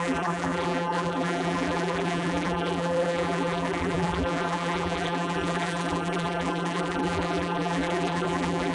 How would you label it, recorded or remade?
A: remade